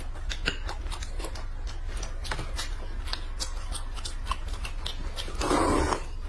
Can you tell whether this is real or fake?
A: real